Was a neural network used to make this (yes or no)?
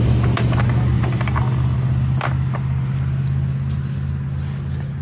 no